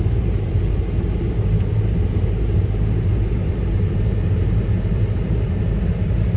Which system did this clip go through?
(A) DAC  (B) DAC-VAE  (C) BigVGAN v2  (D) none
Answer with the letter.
C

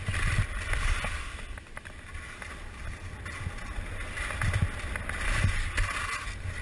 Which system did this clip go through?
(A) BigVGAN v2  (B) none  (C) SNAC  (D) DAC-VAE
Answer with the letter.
B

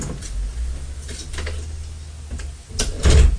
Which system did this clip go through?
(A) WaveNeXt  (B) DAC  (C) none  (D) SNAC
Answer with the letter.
C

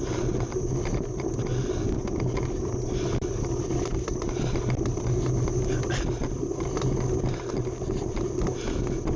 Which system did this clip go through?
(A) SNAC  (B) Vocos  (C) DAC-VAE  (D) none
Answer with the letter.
D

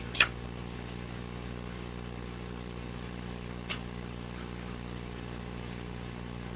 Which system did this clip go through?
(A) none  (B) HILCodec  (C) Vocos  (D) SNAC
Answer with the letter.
A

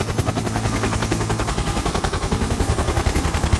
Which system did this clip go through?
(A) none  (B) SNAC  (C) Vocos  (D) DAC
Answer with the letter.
B